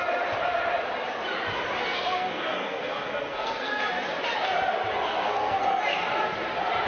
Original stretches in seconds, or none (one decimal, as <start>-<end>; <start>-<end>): 0.0-1.8; 3.8-5.0; 5.8-6.9